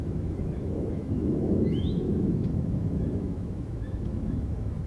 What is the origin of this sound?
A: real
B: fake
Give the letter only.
B